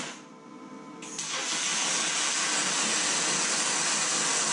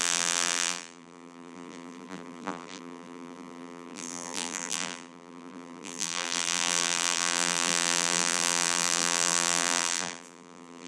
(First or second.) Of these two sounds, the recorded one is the first